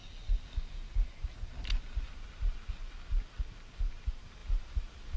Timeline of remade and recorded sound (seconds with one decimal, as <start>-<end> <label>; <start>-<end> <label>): 0.0-5.2 recorded